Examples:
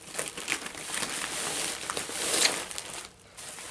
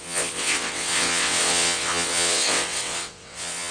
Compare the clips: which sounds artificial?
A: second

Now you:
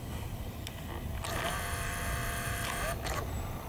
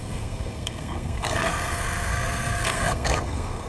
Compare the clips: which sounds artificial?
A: second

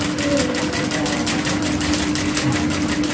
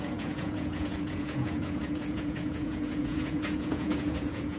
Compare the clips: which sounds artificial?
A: second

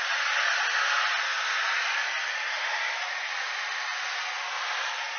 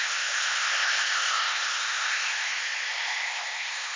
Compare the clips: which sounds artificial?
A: second